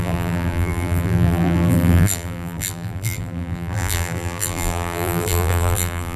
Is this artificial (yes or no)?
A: yes